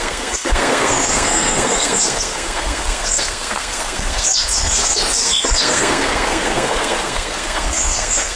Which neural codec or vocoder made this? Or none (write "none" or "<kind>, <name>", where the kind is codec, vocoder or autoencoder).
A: codec, SNAC